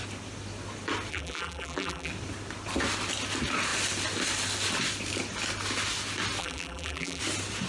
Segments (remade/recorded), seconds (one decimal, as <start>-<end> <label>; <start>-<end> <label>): 0.0-1.1 recorded; 1.1-2.1 remade; 2.1-6.4 recorded; 6.4-7.2 remade; 7.2-7.7 recorded